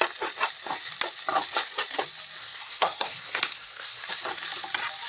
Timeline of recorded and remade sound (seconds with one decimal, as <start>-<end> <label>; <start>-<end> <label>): 0.0-2.4 recorded; 2.4-4.0 remade; 4.0-5.1 recorded